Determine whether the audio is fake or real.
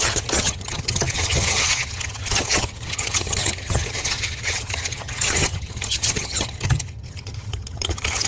fake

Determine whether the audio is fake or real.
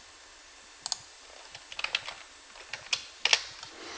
real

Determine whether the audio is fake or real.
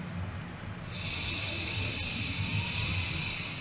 real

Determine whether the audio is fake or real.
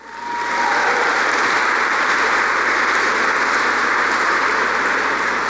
real